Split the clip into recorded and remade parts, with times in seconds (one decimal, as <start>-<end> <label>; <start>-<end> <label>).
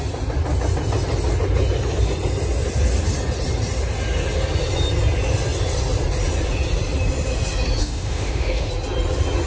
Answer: 0.0-7.8 recorded; 7.8-8.7 remade; 8.7-9.5 recorded